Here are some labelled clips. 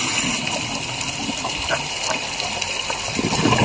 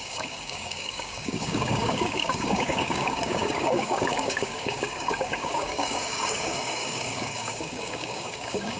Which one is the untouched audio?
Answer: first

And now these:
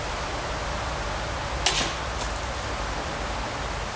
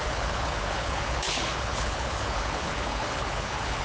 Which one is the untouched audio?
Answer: first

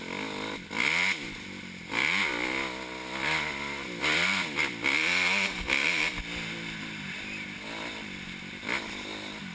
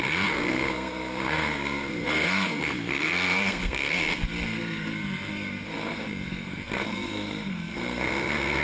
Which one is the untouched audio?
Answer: first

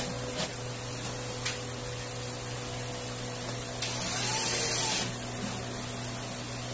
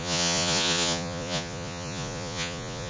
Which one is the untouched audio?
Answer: first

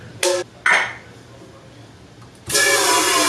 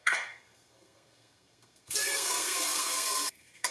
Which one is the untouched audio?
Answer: first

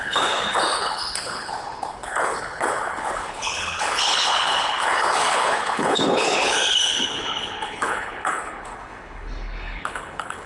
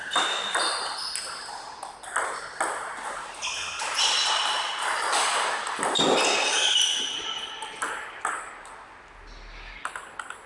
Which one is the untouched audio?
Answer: second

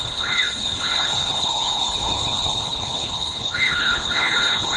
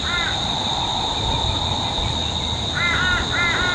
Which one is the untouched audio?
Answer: second